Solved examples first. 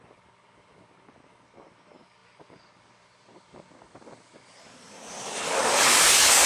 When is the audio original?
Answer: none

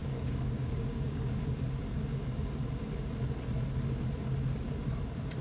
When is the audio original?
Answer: 1.4-5.4